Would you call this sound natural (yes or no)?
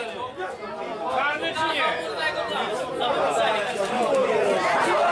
yes